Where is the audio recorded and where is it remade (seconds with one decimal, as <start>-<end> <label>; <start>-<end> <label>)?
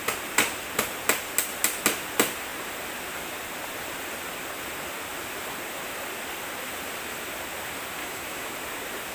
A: 0.0-8.0 recorded; 8.0-8.5 remade; 8.5-9.1 recorded